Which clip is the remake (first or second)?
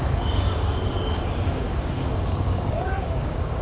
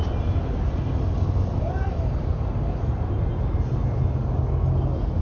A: first